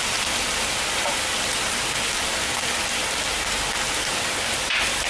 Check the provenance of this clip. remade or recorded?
recorded